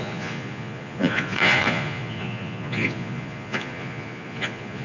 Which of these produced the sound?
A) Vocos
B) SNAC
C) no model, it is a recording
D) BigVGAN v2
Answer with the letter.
A